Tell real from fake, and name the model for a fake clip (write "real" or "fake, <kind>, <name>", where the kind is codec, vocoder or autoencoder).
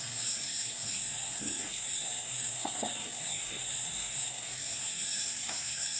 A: fake, codec, SNAC